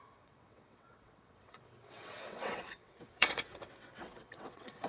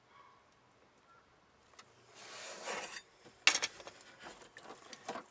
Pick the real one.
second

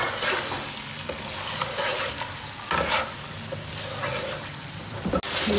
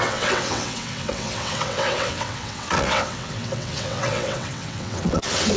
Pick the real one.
first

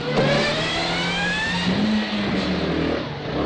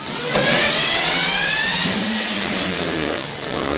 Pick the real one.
first